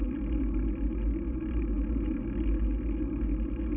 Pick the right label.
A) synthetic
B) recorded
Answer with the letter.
B